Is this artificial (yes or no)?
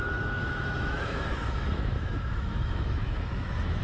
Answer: yes